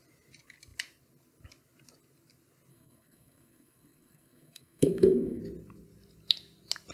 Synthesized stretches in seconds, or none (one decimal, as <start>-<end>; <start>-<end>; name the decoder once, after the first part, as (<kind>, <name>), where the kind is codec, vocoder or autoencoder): 2.7-5.4 (codec, SNAC)

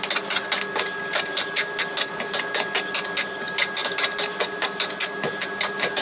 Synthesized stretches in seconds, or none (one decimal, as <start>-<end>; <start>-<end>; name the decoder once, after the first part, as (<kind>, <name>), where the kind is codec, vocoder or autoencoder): none

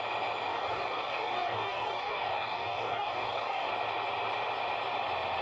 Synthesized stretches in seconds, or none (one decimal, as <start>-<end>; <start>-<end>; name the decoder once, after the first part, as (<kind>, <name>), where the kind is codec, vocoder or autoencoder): 0.5-3.7 (codec, DAC)